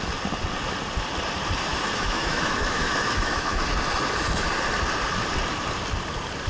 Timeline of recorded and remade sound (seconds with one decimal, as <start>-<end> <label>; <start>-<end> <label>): 0.0-1.7 recorded; 1.7-3.7 remade; 3.7-6.5 recorded